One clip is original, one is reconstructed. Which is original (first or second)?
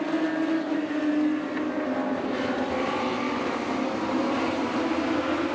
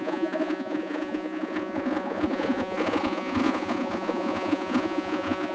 first